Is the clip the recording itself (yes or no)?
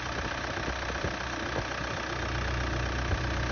yes